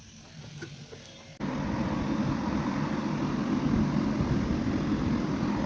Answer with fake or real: real